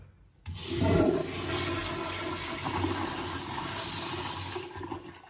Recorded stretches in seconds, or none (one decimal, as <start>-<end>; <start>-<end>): 0.0-5.3